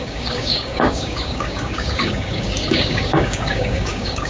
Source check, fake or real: fake